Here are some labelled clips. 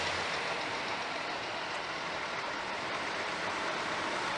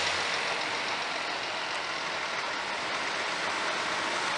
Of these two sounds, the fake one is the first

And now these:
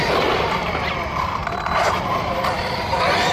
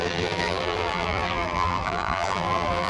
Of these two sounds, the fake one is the second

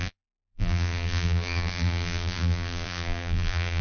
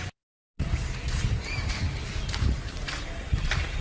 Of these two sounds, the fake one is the first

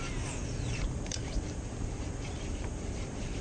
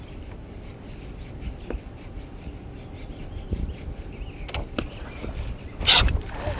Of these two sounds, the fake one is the first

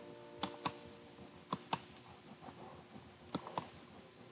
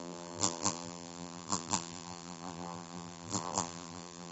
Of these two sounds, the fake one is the second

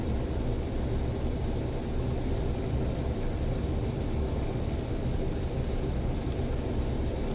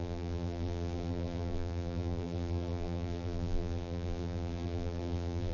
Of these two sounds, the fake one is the second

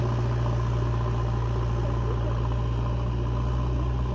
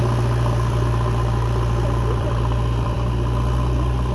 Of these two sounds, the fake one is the second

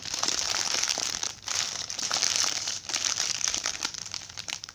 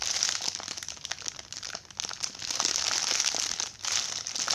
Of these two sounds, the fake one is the first